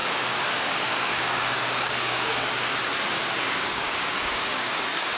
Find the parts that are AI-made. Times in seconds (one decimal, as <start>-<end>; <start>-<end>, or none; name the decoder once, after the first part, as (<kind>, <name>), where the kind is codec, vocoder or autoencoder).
0.0-2.7 (codec, DAC); 3.2-5.2